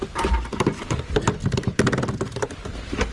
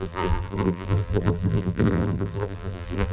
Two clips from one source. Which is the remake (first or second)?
second